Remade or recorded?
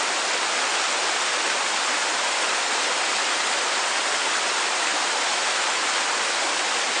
recorded